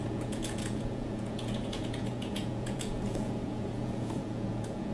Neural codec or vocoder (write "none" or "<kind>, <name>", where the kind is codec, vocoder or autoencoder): vocoder, Vocos